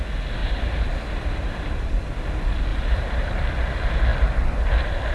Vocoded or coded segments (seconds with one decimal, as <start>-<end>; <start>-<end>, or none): 0.4-2.0; 2.7-3.4